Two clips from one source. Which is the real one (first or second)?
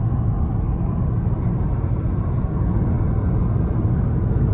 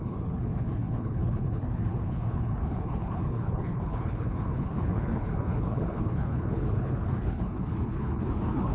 first